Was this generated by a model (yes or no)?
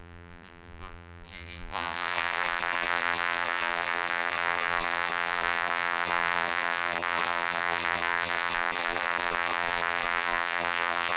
yes